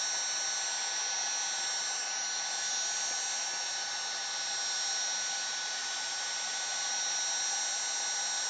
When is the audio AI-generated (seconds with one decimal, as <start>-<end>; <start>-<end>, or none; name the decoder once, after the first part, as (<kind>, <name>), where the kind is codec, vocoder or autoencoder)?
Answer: none